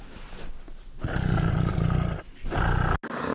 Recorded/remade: recorded